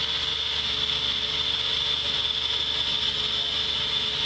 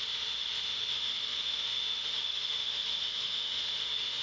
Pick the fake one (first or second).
second